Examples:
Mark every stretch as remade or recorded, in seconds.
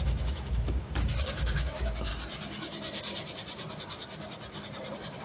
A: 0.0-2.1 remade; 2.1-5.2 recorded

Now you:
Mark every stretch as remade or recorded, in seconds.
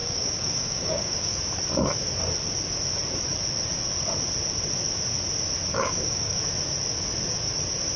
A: 0.0-1.4 remade; 1.4-5.7 recorded; 5.7-6.4 remade; 6.4-8.0 recorded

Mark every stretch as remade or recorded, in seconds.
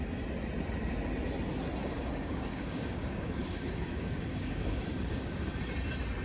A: 0.0-1.8 recorded; 1.8-5.5 remade; 5.5-6.2 recorded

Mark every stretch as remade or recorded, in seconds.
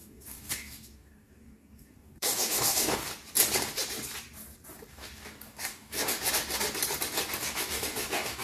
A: 0.0-3.1 remade; 3.1-4.9 recorded; 4.9-6.2 remade; 6.2-7.4 recorded; 7.4-8.4 remade